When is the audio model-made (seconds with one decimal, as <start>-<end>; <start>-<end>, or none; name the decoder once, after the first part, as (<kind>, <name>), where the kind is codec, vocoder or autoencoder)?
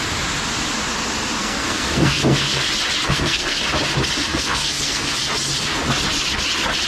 1.4-2.6 (codec, SNAC); 3.0-3.6; 4.3-5.1